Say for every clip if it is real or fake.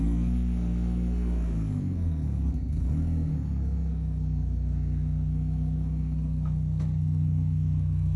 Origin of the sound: fake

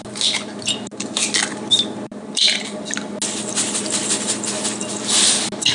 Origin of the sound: real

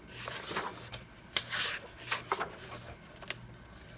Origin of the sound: real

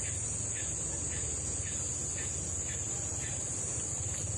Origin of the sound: real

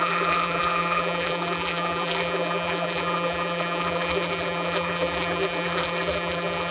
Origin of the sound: fake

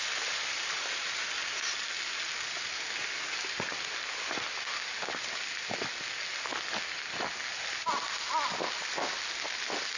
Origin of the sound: real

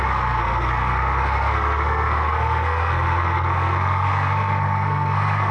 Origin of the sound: fake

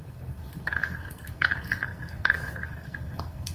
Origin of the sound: fake